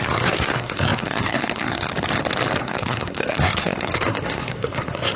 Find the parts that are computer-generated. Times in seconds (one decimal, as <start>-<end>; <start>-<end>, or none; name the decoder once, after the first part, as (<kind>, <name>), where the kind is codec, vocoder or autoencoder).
0.0-1.9 (codec, SNAC); 2.6-5.2